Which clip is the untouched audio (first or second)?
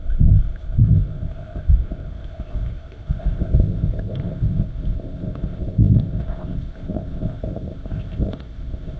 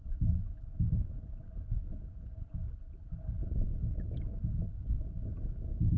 second